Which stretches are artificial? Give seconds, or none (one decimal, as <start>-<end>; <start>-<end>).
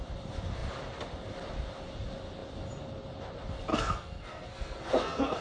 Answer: 3.7-5.4